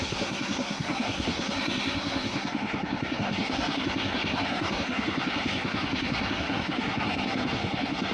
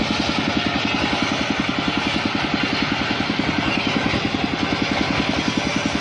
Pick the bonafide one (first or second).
second